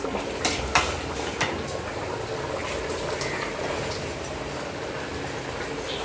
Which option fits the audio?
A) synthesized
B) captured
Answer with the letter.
B